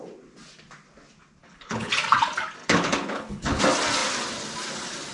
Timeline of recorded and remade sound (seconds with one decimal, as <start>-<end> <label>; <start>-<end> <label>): 0.0-1.4 recorded; 1.4-1.9 remade; 1.9-2.6 recorded; 2.6-3.6 remade; 3.6-5.1 recorded